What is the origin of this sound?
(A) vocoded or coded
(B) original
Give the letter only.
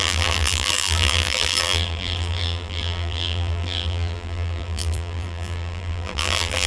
A